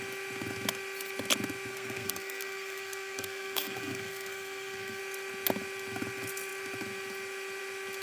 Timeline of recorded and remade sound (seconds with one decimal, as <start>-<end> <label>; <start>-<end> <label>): 0.0-1.7 recorded; 1.7-5.0 remade; 5.0-8.0 recorded